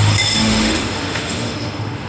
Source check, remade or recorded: remade